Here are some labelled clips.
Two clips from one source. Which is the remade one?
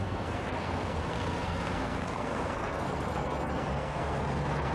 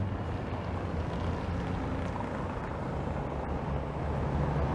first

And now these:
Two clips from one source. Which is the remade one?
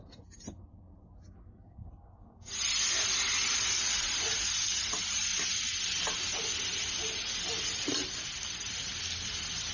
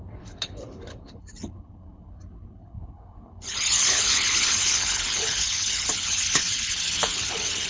second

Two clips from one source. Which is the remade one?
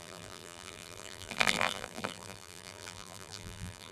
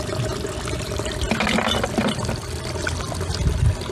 first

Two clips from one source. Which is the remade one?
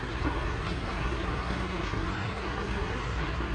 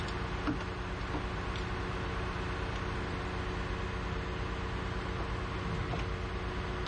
first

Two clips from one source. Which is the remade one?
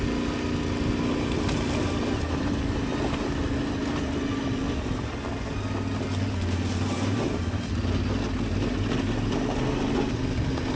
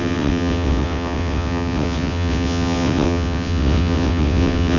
second